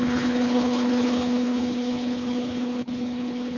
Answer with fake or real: fake